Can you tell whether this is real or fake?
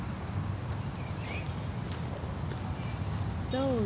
real